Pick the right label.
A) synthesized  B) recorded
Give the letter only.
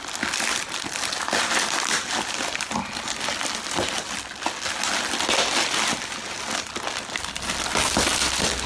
B